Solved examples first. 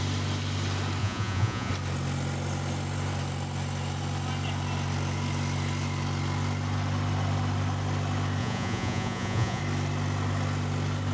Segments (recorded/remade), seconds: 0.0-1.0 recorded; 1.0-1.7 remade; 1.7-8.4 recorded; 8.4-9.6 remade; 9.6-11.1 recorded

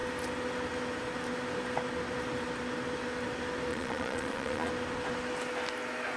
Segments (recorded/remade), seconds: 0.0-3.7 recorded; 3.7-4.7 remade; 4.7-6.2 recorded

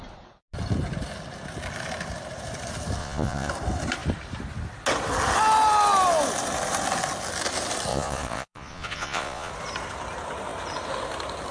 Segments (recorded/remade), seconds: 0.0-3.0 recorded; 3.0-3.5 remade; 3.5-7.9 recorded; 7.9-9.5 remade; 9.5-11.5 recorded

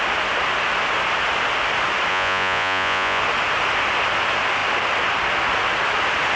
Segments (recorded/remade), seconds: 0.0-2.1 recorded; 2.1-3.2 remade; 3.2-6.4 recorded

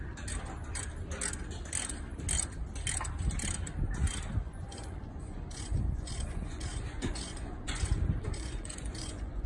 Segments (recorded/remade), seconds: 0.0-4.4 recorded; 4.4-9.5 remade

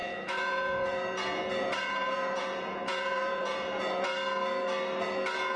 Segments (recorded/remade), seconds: 0.0-4.1 remade; 4.1-5.6 recorded

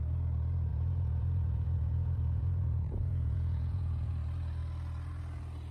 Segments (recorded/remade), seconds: 0.0-0.7 recorded; 0.7-4.1 remade; 4.1-5.7 recorded